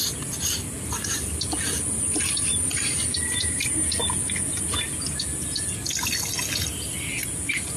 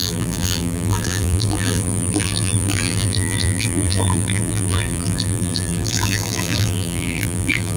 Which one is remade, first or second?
second